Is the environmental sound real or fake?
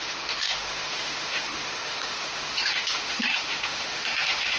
fake